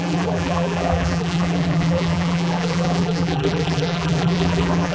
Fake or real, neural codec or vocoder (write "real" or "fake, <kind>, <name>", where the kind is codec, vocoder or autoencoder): fake, vocoder, BigVGAN v2